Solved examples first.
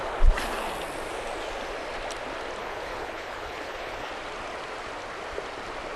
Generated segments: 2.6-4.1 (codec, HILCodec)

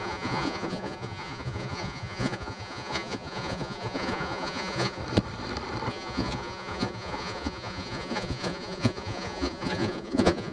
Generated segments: 0.0-5.0 (vocoder, Vocos); 5.9-10.5

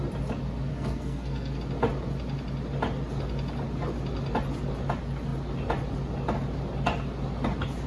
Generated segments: 0.7-1.6 (codec, SNAC)